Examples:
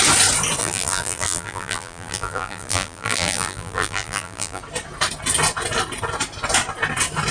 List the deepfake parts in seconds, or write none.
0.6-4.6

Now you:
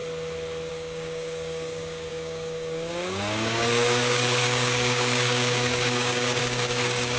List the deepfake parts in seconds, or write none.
0.7-7.2